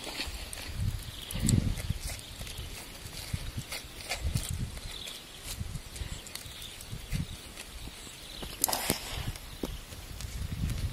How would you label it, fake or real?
real